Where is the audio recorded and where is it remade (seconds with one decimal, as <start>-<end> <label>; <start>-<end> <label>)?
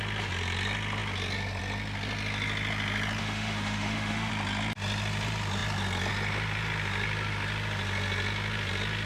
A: 0.0-3.2 recorded; 3.2-4.3 remade; 4.3-9.1 recorded